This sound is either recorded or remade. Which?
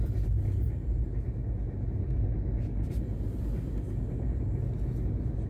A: recorded